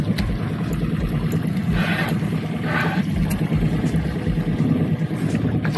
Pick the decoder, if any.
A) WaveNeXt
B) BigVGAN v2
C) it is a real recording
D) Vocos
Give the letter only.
C